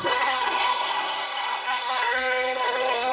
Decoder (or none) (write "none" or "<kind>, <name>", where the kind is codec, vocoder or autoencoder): codec, SNAC